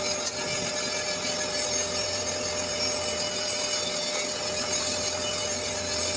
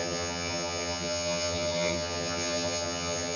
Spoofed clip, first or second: second